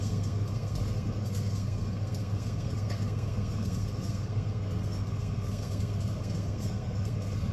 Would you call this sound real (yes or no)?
no